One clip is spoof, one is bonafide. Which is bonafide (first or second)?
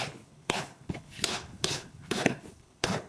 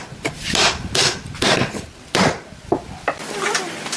second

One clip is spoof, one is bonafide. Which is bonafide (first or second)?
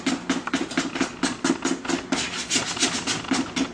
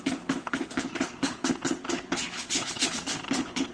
first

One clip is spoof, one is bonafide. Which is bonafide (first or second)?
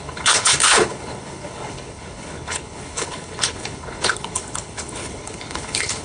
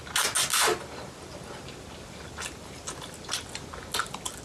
second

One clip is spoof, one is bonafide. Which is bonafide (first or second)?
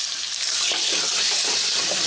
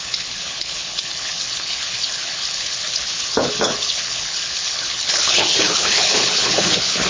first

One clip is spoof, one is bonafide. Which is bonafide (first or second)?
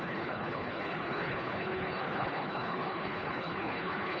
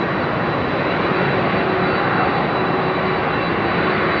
second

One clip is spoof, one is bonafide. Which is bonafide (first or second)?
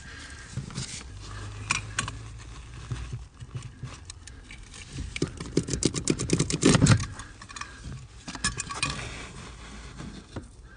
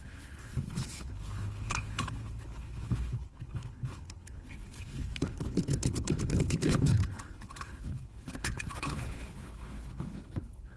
first